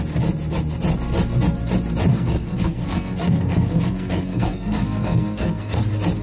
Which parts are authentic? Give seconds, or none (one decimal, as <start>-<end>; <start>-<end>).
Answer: 0.0-2.1; 5.8-6.2